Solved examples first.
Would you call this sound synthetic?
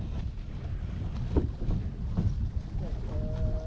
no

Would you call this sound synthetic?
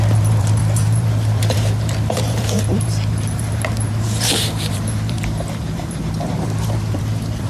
yes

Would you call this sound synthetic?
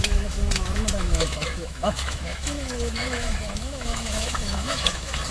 yes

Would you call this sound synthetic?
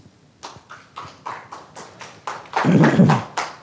no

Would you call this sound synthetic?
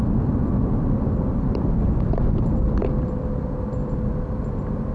no